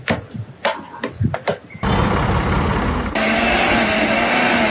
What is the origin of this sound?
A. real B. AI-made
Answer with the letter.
A